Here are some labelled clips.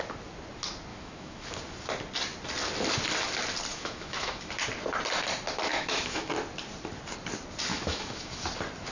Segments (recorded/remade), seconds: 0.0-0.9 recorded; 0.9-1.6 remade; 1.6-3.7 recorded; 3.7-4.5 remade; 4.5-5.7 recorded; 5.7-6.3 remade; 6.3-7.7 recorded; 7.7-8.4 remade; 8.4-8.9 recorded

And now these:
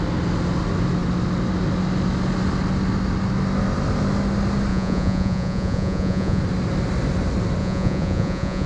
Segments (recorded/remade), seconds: 0.0-4.7 recorded; 4.7-6.4 remade; 6.4-7.6 recorded; 7.6-8.7 remade

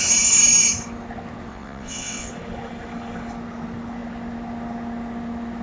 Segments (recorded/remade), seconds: 0.0-1.5 recorded; 1.5-2.3 remade; 2.3-5.6 recorded

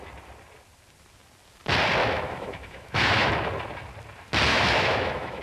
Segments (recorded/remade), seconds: 0.0-2.0 recorded; 2.0-3.3 remade; 3.3-4.5 recorded; 4.5-5.4 remade

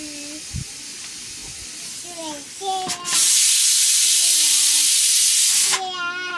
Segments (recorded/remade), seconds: 0.0-6.4 recorded